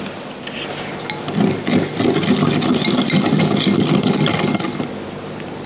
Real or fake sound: real